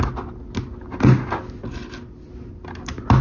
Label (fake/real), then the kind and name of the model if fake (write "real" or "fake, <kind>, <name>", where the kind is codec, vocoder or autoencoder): real